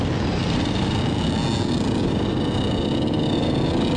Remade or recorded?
recorded